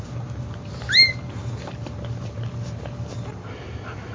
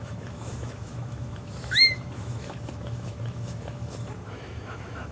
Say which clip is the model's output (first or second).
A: second